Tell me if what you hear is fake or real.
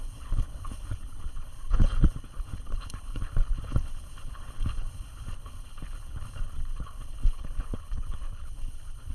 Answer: fake